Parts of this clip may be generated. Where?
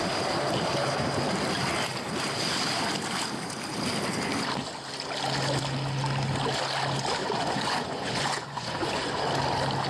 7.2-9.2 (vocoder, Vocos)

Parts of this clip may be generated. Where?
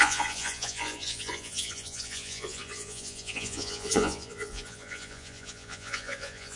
0.0-6.6 (vocoder, Vocos)